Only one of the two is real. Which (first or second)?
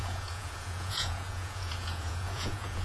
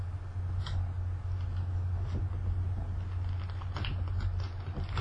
second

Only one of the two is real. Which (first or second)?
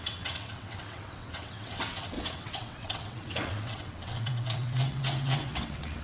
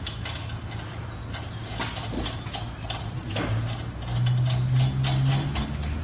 second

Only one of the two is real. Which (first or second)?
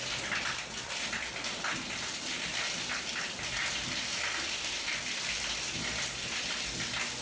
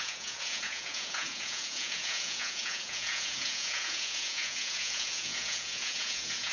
first